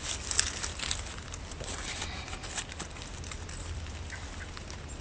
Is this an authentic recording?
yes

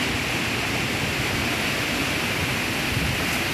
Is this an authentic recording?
yes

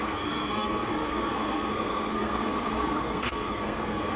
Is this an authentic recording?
no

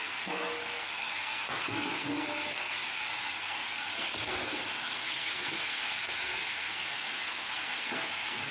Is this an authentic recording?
no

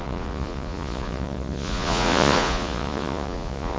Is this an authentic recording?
no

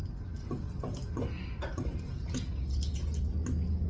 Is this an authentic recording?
yes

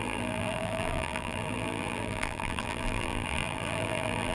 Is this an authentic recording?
no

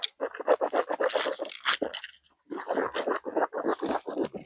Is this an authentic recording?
yes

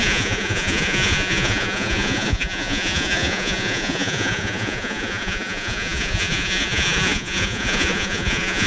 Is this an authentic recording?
no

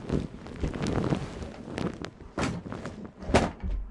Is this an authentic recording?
yes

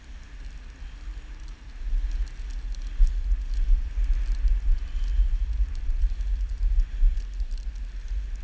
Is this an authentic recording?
yes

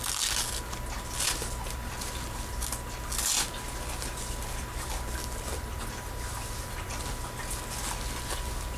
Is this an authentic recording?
yes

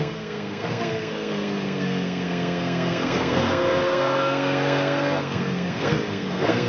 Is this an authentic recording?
no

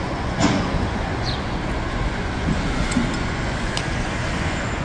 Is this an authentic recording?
no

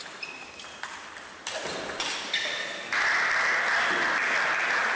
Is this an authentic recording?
yes